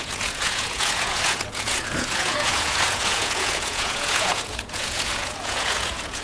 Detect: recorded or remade remade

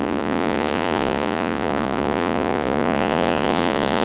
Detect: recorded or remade remade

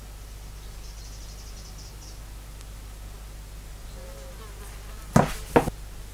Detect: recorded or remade recorded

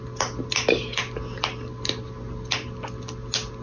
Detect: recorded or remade recorded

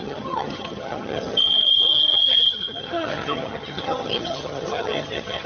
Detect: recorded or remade remade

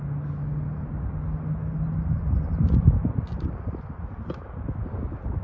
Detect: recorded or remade recorded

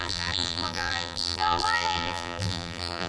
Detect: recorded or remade remade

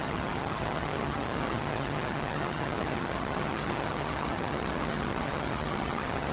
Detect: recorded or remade remade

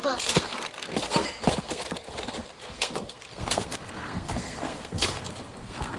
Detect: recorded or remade remade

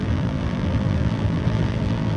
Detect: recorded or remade remade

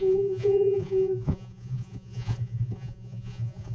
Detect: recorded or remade remade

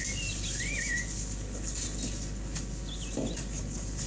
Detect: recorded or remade recorded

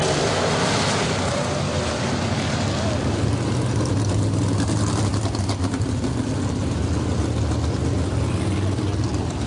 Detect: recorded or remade recorded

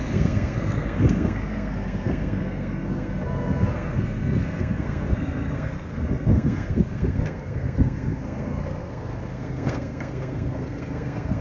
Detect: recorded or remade remade